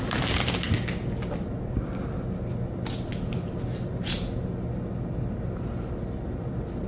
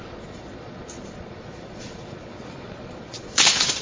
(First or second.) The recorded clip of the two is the first